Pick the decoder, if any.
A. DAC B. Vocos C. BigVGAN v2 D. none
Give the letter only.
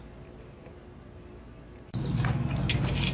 D